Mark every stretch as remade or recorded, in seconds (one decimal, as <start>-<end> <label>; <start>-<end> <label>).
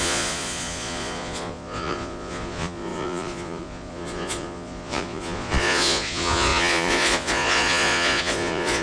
0.0-8.8 remade